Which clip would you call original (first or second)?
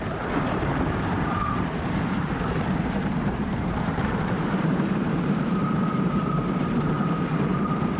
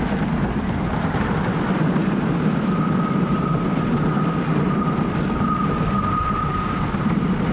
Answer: second